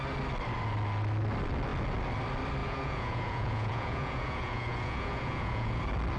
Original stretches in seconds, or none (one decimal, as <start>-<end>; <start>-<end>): 0.0-2.6; 5.8-6.2